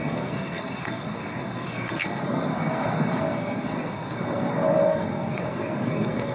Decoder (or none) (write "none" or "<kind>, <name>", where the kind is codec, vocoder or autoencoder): codec, SNAC